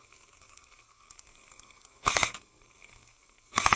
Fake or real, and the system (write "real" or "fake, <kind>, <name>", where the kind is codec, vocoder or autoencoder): fake, codec, SNAC